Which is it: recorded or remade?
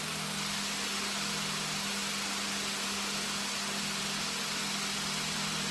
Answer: recorded